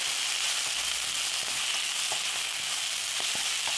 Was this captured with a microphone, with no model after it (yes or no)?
yes